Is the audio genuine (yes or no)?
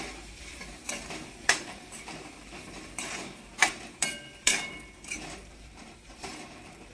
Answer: no